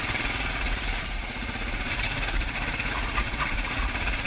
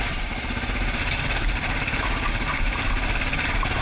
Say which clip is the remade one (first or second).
first